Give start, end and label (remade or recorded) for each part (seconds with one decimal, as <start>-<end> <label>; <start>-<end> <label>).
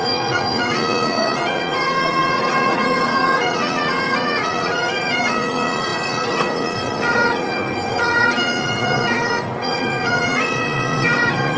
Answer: 0.0-11.6 remade